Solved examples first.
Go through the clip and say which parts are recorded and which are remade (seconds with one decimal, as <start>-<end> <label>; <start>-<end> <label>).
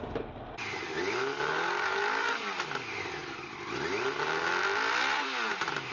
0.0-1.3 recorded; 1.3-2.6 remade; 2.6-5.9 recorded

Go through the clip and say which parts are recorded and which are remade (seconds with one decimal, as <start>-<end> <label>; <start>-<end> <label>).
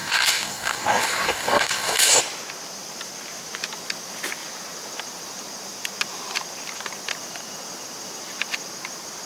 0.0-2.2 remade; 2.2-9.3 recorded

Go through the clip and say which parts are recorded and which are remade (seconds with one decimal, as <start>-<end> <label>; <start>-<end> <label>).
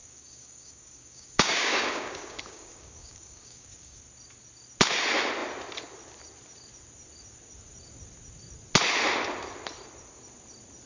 0.0-4.0 remade; 4.0-10.9 recorded